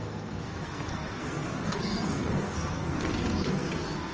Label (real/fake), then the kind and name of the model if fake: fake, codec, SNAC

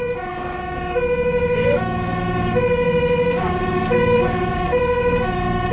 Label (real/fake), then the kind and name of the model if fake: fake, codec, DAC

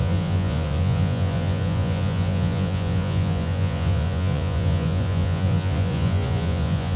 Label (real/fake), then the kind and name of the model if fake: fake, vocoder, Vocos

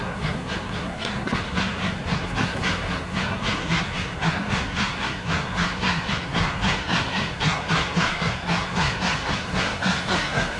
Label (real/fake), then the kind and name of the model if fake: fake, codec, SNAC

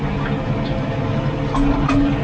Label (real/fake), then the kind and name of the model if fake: real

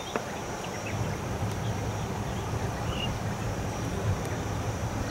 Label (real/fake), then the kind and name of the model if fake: real